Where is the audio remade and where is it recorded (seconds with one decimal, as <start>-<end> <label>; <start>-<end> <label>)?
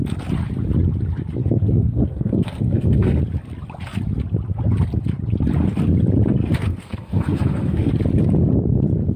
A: 0.0-1.4 recorded; 1.4-3.2 remade; 3.2-6.6 recorded; 6.6-7.9 remade; 7.9-9.2 recorded